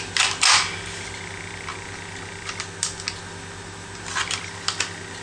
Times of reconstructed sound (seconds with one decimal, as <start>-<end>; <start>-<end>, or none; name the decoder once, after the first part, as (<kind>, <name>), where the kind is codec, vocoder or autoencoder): none

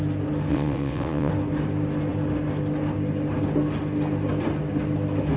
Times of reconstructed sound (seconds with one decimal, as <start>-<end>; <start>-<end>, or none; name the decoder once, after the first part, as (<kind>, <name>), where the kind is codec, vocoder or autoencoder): 0.5-1.3 (vocoder, WaveNeXt)